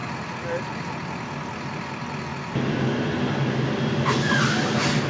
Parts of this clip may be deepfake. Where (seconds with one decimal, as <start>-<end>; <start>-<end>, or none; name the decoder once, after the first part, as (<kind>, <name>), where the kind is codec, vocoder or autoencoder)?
none